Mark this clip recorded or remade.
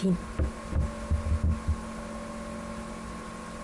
recorded